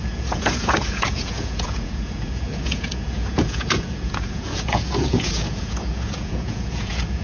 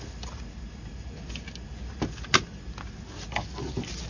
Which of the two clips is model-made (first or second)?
first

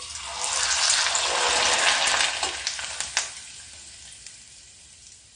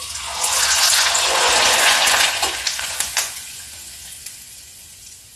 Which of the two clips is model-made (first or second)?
second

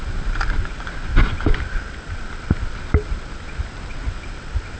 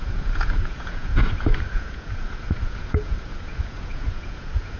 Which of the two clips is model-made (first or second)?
second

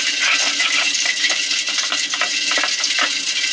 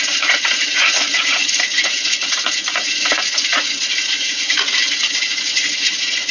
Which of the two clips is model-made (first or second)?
second